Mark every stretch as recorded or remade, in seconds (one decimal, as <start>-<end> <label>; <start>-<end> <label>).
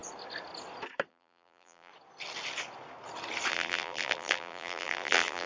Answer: 0.0-1.1 recorded; 1.1-1.9 remade; 1.9-3.5 recorded; 3.5-5.5 remade